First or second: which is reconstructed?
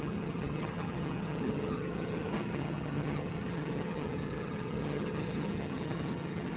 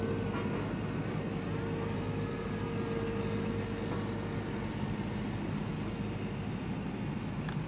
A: first